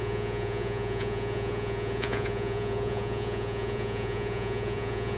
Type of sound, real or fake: fake